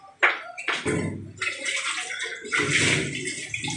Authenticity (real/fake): real